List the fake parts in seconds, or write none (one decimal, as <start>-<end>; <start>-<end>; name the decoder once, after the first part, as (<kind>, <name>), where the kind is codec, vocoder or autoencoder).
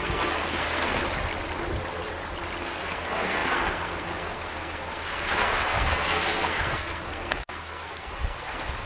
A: 0.0-1.0 (codec, SNAC); 2.6-8.8